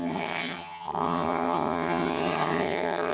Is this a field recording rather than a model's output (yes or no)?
no